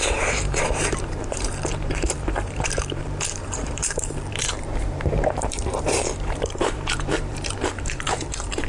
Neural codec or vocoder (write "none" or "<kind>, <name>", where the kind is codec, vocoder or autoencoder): vocoder, BigVGAN v2